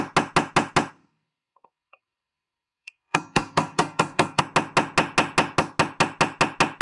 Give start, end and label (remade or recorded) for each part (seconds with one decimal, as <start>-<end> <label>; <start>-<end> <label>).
0.0-1.0 recorded; 1.0-4.4 remade; 4.4-6.8 recorded